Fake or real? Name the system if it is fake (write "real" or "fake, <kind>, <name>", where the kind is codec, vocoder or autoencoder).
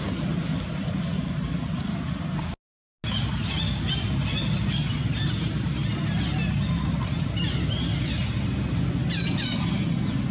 real